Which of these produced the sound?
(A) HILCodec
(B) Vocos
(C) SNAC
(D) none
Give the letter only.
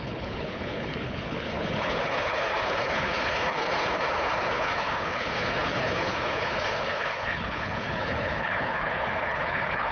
A